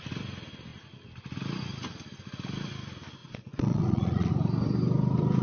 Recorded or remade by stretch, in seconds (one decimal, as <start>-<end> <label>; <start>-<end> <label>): 0.0-3.2 recorded; 3.2-4.3 remade; 4.3-5.4 recorded